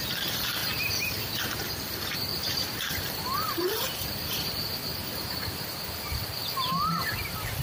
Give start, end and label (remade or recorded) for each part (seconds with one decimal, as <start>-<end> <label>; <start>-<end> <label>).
0.0-0.6 remade; 0.6-1.4 recorded; 1.4-7.6 remade